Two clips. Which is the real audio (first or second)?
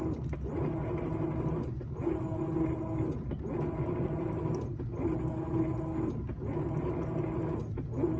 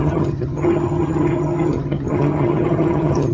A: first